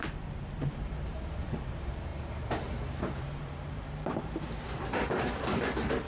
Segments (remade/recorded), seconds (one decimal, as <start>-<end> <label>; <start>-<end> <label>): 0.0-6.1 remade